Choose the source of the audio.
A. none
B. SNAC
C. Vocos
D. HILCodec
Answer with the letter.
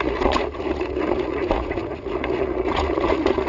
C